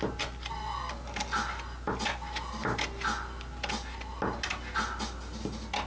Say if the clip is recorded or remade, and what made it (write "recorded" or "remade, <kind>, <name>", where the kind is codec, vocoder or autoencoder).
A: recorded